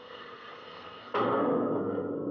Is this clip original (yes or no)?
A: no